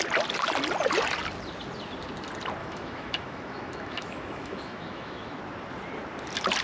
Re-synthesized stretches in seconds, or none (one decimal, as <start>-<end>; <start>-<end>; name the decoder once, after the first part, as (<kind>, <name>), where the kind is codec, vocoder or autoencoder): 2.6-5.4 (autoencoder, DAC-VAE)